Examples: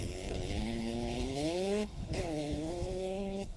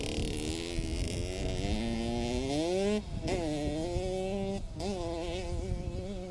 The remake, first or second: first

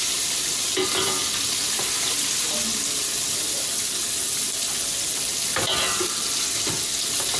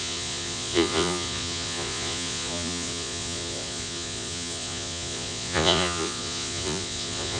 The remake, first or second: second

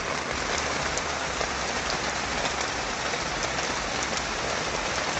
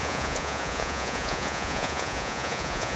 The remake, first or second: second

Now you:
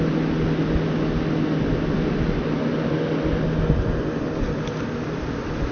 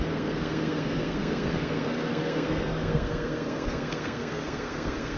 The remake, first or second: second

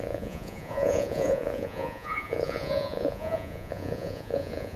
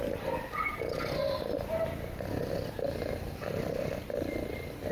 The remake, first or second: first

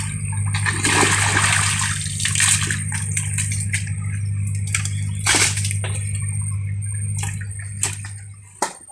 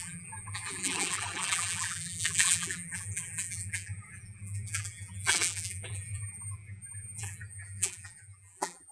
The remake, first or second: second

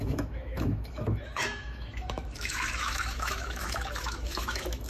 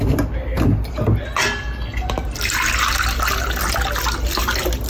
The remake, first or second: first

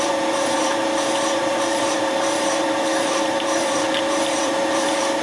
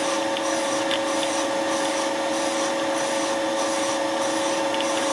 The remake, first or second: first